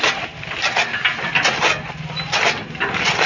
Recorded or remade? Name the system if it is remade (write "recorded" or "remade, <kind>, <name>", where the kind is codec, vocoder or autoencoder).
recorded